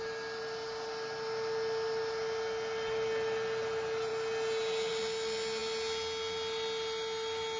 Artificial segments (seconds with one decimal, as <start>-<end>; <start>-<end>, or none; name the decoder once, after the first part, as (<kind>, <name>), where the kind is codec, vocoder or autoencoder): none